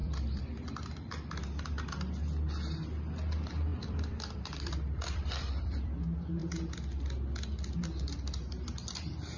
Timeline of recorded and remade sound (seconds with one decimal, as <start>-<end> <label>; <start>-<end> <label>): 0.0-0.7 remade; 0.7-3.7 recorded; 3.7-5.9 remade; 5.9-9.4 recorded